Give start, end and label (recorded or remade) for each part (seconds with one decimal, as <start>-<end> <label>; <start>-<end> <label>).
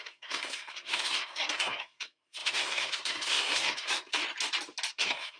0.0-4.2 remade; 4.2-4.9 recorded; 4.9-5.4 remade